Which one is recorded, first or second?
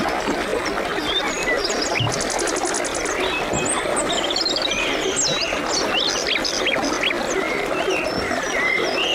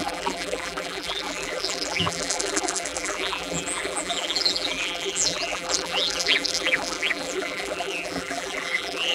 first